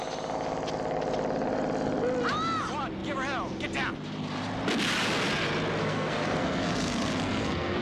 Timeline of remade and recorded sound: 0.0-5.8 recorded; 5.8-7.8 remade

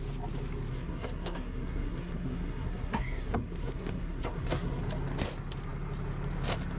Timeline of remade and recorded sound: 0.0-0.7 recorded; 0.7-4.8 remade; 4.8-6.8 recorded

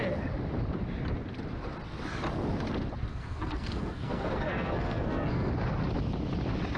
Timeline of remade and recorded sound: 0.0-3.1 recorded; 3.1-5.5 remade; 5.5-6.8 recorded